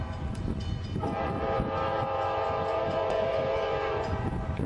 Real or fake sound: fake